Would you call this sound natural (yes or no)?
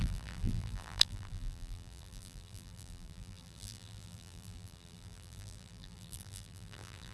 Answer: no